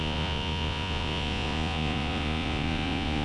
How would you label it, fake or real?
fake